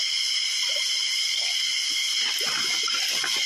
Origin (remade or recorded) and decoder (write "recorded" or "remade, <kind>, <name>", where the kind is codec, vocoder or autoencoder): recorded